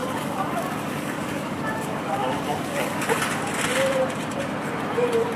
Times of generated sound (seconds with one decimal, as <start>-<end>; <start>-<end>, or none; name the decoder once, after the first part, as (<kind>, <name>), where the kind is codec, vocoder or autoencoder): 0.0-3.2 (codec, DAC)